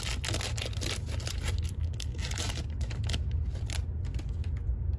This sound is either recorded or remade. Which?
recorded